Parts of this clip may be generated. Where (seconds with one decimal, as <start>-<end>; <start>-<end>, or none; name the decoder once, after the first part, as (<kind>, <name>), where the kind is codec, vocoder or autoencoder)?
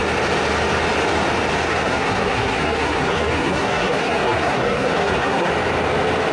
1.7-5.5 (codec, SNAC)